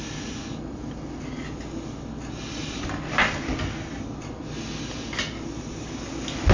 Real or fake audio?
real